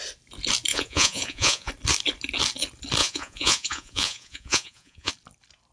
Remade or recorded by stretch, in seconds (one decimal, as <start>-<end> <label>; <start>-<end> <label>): 0.0-0.7 recorded; 0.7-1.7 remade; 1.7-3.0 recorded; 3.0-5.1 remade; 5.1-5.7 recorded